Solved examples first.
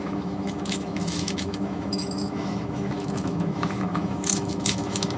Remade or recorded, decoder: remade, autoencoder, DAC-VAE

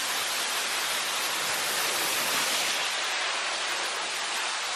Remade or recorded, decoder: recorded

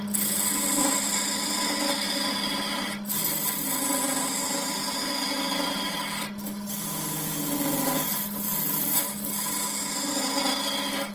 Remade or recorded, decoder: recorded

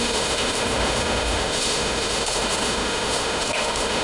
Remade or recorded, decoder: remade, autoencoder, DAC-VAE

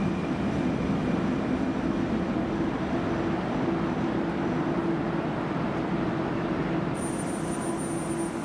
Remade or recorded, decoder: recorded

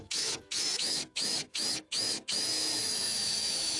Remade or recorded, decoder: remade, autoencoder, DAC-VAE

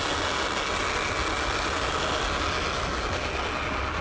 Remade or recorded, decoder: recorded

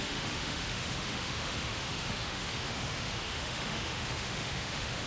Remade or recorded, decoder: remade, autoencoder, DAC-VAE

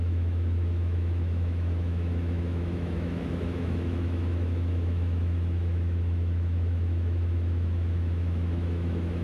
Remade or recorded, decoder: remade, autoencoder, DAC-VAE